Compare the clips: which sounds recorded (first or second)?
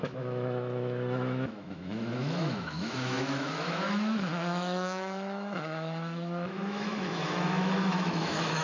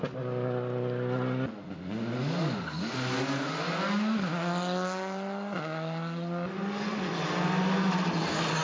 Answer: second